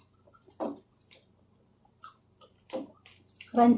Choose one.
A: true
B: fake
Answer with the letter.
A